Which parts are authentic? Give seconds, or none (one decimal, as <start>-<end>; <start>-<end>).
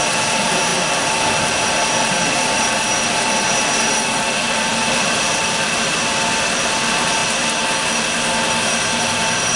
7.2-7.9